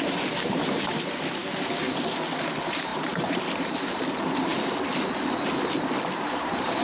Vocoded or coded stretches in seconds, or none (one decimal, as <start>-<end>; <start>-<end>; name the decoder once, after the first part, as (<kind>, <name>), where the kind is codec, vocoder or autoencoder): 0.0-1.4 (vocoder, BigVGAN v2); 2.5-4.5; 6.3-6.8